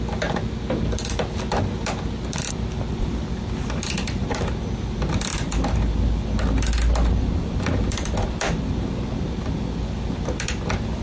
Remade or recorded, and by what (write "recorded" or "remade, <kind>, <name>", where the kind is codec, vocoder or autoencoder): recorded